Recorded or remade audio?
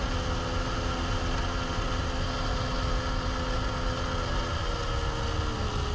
recorded